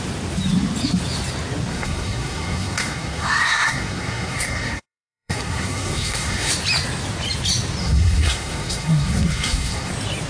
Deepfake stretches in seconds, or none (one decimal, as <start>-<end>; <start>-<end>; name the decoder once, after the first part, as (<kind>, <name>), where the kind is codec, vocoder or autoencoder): 1.7-6.5 (codec, SNAC); 7.8-9.9